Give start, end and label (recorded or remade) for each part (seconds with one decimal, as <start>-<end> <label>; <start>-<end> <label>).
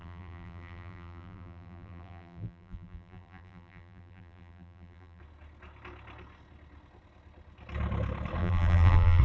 0.0-5.2 remade; 5.2-8.4 recorded; 8.4-9.2 remade